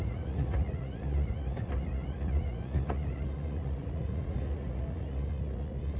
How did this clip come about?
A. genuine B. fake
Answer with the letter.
B